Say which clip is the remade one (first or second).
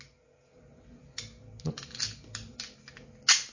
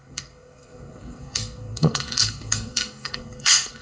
second